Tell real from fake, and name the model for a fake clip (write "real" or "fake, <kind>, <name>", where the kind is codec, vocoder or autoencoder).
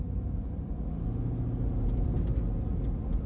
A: real